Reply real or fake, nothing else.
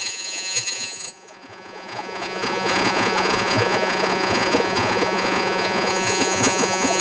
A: fake